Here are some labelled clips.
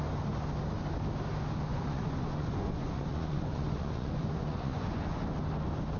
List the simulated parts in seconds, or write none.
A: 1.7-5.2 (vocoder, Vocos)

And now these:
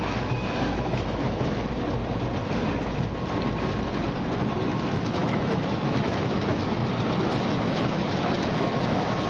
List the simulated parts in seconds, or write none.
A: 0.0-1.7 (autoencoder, DAC-VAE); 4.7-6.8; 7.3-9.3

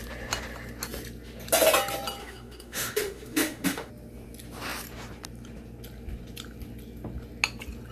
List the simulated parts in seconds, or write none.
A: 2.2-3.9 (autoencoder, DAC-VAE)

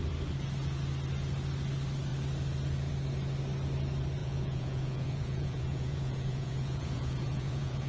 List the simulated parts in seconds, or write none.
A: 4.2-7.9 (vocoder, Vocos)

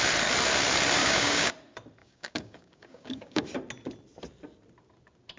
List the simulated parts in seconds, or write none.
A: 1.0-1.5 (codec, DAC); 2.0-3.4